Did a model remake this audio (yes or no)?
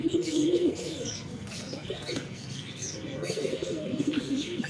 yes